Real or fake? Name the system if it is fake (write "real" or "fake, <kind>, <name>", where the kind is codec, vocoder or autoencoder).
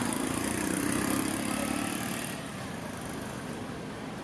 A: real